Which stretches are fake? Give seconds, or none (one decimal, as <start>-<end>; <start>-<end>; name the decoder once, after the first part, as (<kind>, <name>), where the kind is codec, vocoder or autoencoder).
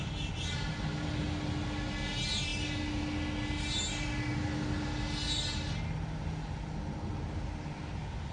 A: none